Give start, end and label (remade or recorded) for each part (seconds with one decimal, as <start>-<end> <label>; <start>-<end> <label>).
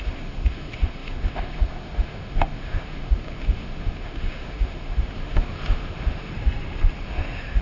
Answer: 0.0-6.3 remade; 6.3-7.0 recorded; 7.0-7.6 remade